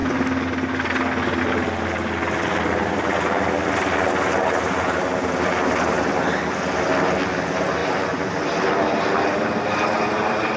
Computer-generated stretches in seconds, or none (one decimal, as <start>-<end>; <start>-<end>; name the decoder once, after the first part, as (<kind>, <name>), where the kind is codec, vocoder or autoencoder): none